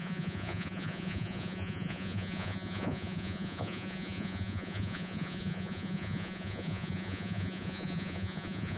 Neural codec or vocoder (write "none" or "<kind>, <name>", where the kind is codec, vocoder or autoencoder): vocoder, Vocos